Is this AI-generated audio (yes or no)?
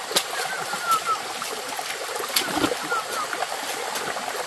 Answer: no